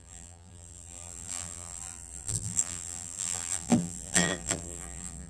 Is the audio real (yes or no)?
no